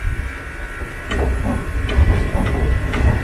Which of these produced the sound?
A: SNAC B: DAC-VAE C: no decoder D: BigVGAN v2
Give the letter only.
D